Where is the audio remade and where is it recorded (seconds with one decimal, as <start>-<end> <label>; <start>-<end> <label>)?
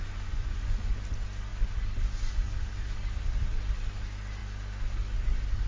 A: 0.0-0.9 remade; 0.9-5.7 recorded